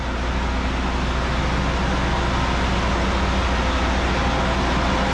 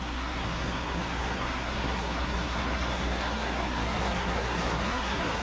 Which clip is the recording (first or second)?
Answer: first